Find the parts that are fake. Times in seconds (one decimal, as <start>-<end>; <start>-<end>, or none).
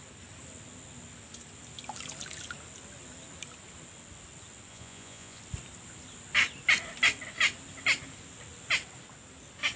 4.7-5.4